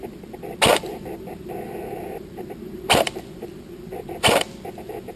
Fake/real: real